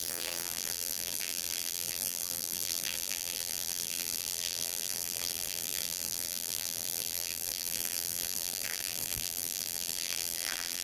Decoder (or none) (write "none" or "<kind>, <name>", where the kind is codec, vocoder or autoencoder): vocoder, BigVGAN v2